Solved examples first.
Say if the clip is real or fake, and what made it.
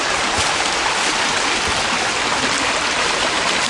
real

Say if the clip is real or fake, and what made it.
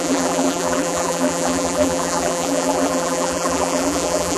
fake, vocoder, BigVGAN v2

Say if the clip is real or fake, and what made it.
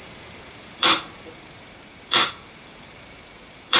fake, vocoder, BigVGAN v2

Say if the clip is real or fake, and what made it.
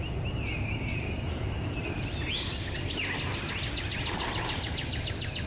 real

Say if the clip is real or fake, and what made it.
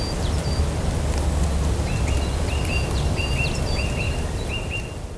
real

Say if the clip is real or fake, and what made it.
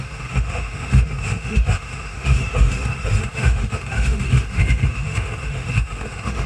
fake, autoencoder, DAC-VAE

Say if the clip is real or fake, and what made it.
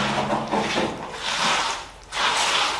real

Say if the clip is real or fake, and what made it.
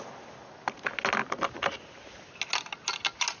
real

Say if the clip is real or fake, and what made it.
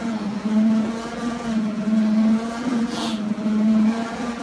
fake, vocoder, BigVGAN v2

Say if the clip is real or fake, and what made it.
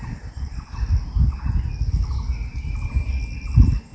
real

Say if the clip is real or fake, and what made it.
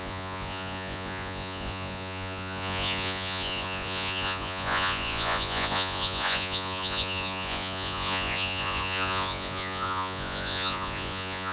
fake, vocoder, Vocos